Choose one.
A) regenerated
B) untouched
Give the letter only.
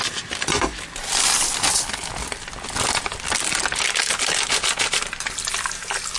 B